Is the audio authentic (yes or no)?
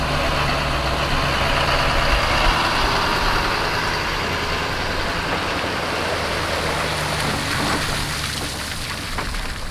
yes